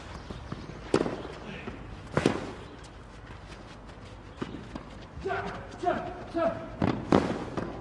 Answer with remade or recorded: recorded